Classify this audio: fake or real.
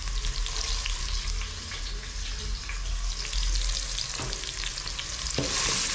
real